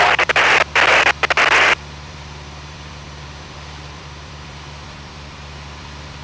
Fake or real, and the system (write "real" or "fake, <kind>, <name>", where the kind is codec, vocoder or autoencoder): fake, vocoder, BigVGAN v2